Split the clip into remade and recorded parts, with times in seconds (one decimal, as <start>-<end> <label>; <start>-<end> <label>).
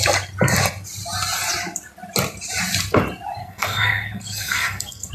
0.0-3.4 recorded; 3.4-5.1 remade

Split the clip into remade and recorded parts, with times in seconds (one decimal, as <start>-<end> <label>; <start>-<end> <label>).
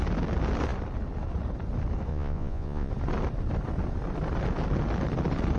0.0-2.1 recorded; 2.1-2.9 remade; 2.9-5.6 recorded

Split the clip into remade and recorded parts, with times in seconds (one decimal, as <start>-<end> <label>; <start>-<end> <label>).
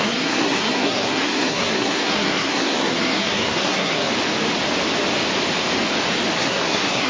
0.0-4.1 remade; 4.1-6.4 recorded; 6.4-7.1 remade